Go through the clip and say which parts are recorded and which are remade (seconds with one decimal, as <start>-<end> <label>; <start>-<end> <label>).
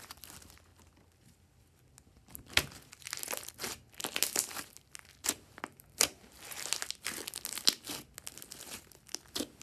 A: 0.0-9.6 recorded